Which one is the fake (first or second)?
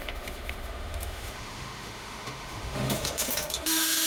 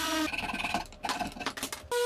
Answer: first